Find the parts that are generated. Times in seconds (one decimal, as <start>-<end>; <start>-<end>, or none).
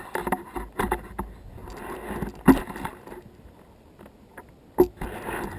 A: none